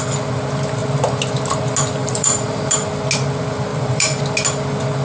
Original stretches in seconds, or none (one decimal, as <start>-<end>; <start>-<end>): 0.0-2.0; 2.9-3.7; 4.2-5.0